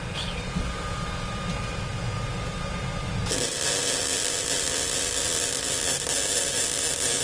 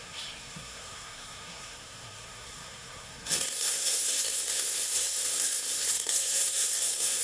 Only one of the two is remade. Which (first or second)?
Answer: second